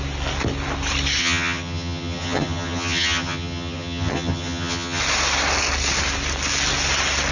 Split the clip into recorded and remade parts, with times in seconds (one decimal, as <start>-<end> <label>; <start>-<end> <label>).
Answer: 0.0-1.2 recorded; 1.2-5.0 remade; 5.0-7.3 recorded